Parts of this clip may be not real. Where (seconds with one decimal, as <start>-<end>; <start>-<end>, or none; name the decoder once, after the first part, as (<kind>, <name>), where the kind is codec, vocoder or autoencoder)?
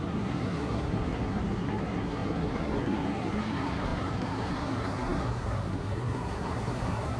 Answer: 0.0-7.2 (codec, SNAC)